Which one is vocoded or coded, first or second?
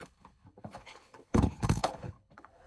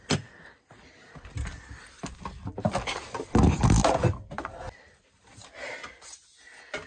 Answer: first